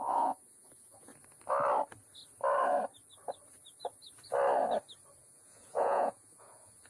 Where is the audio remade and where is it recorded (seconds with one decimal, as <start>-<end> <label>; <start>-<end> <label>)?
0.0-1.1 remade; 1.1-5.2 recorded; 5.2-6.9 remade